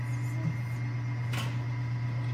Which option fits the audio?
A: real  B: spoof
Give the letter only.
A